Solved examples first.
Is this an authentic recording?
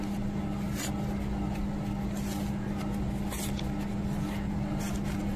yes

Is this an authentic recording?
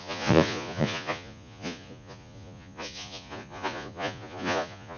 no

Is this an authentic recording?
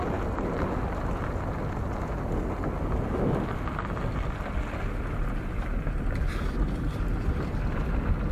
yes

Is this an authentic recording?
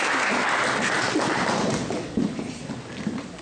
yes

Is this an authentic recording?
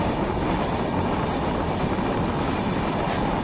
yes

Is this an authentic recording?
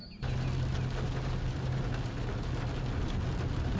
yes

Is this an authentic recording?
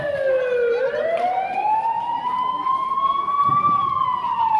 yes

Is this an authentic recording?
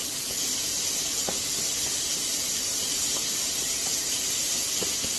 yes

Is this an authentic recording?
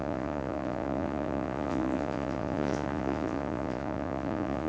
no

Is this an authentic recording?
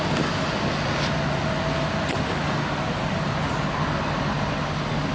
yes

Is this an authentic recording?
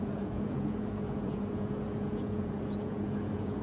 no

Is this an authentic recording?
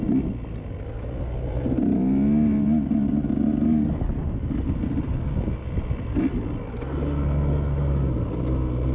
yes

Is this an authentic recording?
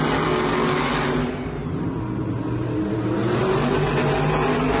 yes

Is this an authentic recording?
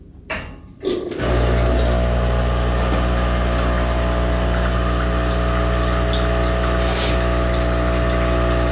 yes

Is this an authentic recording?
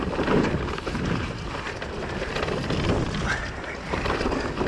yes